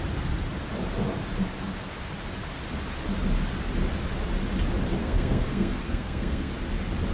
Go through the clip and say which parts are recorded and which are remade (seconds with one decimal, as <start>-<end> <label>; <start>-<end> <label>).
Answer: 0.0-5.0 recorded; 5.0-6.5 remade; 6.5-7.1 recorded